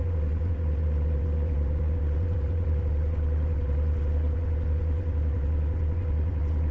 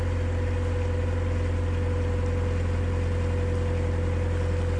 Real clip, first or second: second